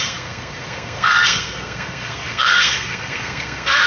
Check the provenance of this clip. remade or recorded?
remade